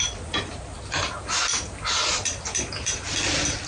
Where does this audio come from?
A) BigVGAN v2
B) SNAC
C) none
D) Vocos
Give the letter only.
C